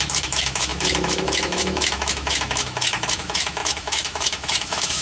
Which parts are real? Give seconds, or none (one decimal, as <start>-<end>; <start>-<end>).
none